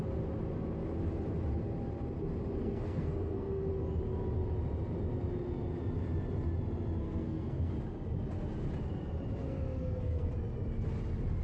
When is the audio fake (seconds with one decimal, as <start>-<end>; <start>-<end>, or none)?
2.6-3.7; 7.0-7.7; 9.4-10.3